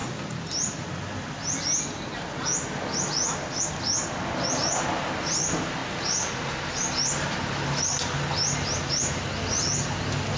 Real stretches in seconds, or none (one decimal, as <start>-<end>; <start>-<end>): 0.0-10.4